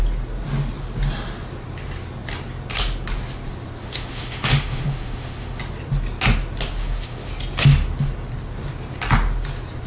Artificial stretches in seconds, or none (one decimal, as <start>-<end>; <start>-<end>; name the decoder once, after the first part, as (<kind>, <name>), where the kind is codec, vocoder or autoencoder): 3.8-5.6 (autoencoder, DAC-VAE); 6.8-7.3